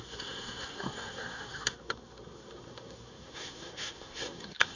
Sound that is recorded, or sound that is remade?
remade